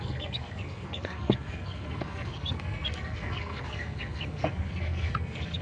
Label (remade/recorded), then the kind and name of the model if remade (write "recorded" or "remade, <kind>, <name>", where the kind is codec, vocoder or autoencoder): remade, codec, SNAC